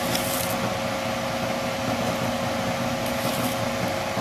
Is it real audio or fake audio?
real